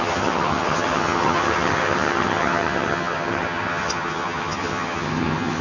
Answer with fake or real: fake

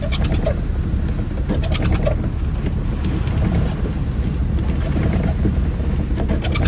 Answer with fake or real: real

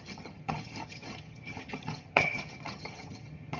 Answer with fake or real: fake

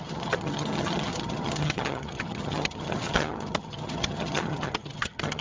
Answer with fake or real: fake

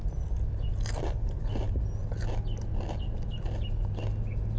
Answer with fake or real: real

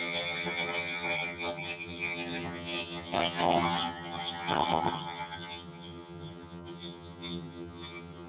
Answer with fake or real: fake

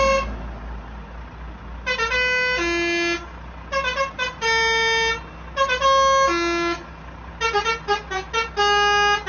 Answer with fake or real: real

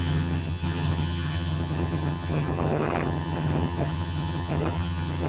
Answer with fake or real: fake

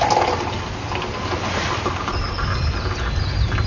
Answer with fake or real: real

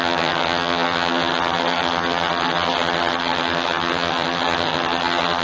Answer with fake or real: fake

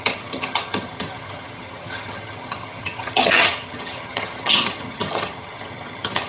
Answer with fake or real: fake